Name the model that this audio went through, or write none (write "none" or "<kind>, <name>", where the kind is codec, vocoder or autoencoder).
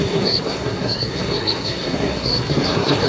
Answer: codec, SNAC